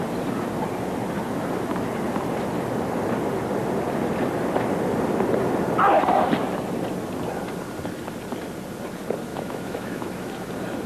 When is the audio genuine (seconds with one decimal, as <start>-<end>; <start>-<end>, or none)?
0.0-9.3; 10.5-10.9